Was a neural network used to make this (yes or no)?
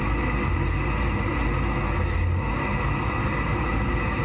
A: no